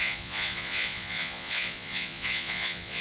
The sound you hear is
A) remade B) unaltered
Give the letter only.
A